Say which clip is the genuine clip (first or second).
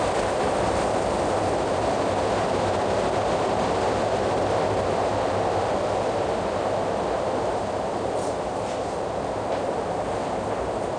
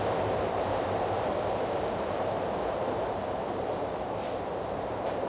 first